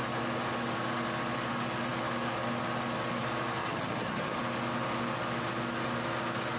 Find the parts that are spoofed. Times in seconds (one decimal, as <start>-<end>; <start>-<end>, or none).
3.6-4.4